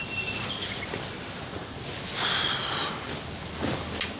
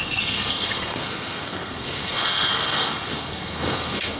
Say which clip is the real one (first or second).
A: first